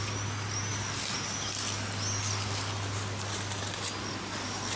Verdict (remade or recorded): recorded